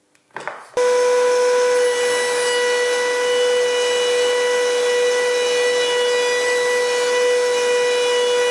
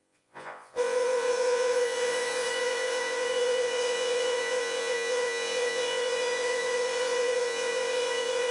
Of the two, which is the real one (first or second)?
first